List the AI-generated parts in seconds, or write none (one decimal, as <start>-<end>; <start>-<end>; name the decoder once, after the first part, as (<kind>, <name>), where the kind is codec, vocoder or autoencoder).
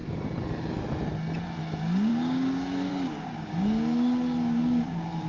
1.6-5.3 (codec, DAC)